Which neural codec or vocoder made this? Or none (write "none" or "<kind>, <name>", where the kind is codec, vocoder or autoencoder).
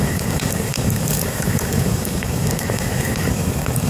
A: codec, DAC